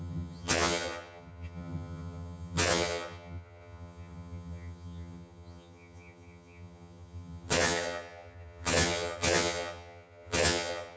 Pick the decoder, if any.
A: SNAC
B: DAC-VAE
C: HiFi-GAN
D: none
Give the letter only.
C